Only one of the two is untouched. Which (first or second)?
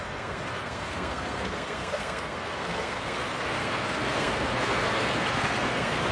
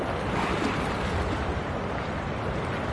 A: second